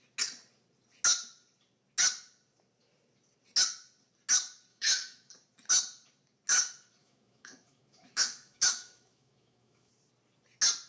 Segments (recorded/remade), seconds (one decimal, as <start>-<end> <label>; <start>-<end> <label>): 0.0-4.7 recorded; 4.7-5.3 remade; 5.3-7.0 recorded; 7.0-9.9 remade; 9.9-10.9 recorded